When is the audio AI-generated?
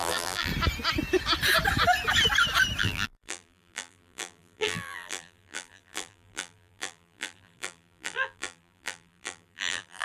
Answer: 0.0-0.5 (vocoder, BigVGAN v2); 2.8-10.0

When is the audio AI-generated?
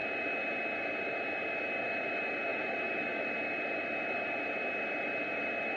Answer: 2.5-3.3 (vocoder, BigVGAN v2)